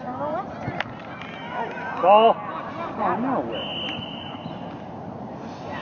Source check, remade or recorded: recorded